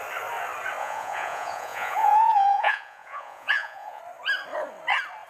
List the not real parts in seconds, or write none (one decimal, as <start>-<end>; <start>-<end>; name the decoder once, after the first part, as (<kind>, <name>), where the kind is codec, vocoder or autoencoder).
0.8-4.0 (vocoder, Vocos)